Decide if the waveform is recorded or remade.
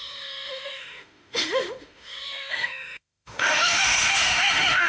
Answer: remade